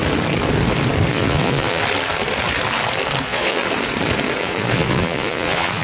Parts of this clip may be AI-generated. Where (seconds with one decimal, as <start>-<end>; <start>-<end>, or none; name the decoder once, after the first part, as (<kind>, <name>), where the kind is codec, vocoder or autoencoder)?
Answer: 1.1-1.8 (vocoder, Vocos); 3.2-3.6; 4.4-5.8